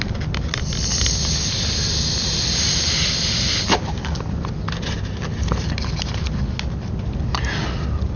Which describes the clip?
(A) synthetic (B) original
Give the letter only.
B